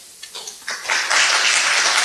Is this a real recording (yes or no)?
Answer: yes